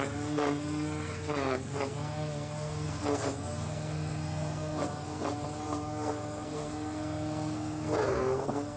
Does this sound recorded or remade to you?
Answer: remade